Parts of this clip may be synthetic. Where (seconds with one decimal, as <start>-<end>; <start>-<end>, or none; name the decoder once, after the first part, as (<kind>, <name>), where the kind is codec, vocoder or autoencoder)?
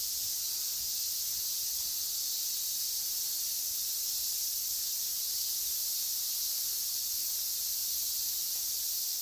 none